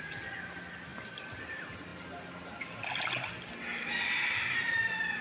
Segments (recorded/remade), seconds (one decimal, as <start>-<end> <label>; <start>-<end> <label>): 0.0-5.2 recorded